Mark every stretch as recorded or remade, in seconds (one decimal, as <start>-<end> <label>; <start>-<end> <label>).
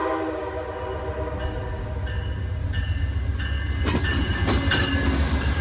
0.0-5.6 recorded